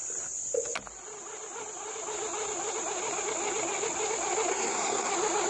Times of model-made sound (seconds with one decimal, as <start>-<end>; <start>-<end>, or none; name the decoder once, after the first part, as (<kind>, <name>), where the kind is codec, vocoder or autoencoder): 4.5-5.1 (codec, SNAC)

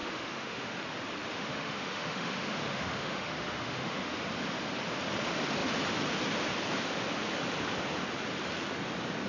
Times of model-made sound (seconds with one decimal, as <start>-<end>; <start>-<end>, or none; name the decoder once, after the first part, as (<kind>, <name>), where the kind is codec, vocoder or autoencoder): 0.0-0.8 (autoencoder, DAC-VAE); 1.3-4.2

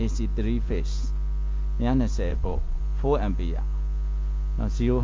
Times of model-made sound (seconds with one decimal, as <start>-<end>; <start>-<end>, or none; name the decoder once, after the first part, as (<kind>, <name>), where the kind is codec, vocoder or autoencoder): 2.3-2.8 (vocoder, Vocos)

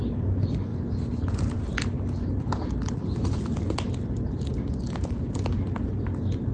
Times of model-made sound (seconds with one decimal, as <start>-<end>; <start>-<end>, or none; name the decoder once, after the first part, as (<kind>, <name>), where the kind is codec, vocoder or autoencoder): none

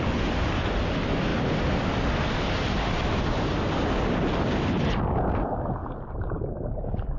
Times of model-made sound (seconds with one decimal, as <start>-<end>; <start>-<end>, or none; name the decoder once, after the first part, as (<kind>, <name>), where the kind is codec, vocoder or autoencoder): 5.8-6.8 (vocoder, BigVGAN v2)